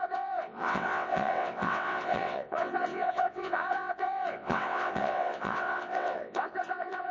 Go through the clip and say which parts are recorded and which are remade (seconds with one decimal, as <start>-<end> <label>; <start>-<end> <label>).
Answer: 0.0-7.1 remade